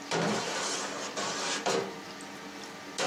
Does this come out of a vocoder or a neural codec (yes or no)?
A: no